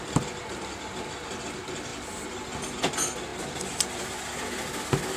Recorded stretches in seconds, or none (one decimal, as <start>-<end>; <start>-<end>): 0.0-5.2